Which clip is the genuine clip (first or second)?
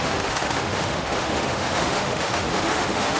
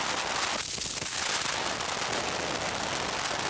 second